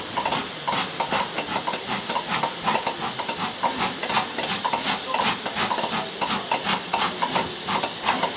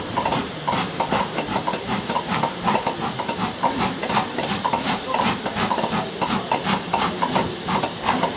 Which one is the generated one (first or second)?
second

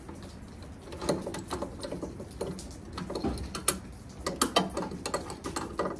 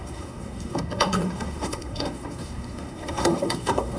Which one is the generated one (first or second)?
second